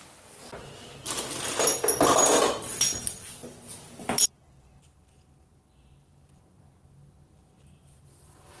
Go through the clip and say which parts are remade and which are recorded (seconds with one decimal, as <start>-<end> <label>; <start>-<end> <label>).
0.0-8.6 recorded